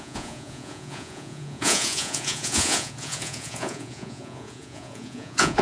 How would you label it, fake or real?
fake